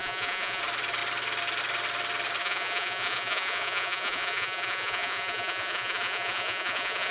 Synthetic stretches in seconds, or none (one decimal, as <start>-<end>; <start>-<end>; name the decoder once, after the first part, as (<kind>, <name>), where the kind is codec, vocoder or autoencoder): 0.0-0.6 (vocoder, Vocos); 2.4-7.1